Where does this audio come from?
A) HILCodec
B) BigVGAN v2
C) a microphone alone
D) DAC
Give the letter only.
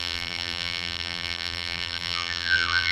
B